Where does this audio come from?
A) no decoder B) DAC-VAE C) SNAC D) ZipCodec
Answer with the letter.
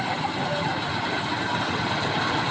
A